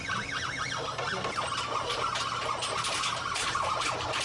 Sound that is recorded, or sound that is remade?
recorded